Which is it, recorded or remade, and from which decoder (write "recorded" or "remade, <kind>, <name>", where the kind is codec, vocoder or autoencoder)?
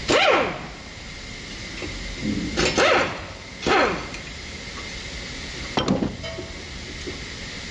recorded